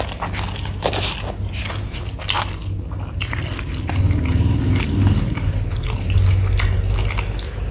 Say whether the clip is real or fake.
real